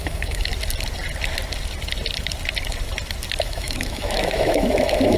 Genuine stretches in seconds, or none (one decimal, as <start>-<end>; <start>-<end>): 0.5-3.4